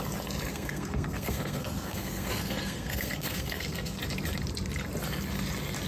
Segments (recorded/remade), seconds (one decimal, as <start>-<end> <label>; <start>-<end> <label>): 0.0-0.5 recorded; 0.5-4.0 remade; 4.0-5.9 recorded